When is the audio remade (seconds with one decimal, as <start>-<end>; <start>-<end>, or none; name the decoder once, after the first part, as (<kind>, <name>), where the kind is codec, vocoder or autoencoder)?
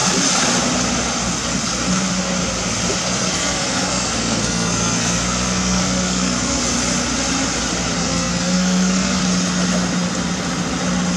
3.0-6.6 (codec, SNAC); 8.0-9.2